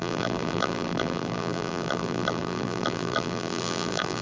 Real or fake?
fake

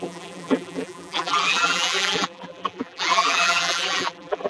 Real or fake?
fake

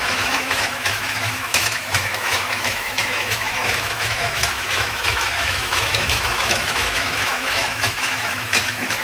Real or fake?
fake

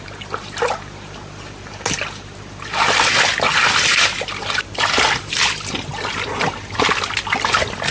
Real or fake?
real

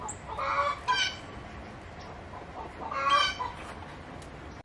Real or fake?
real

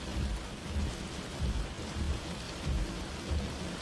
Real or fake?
real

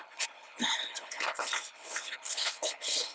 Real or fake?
fake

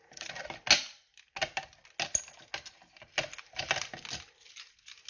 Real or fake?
real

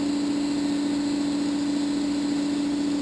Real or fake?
real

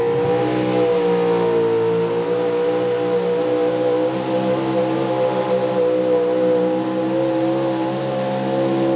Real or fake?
real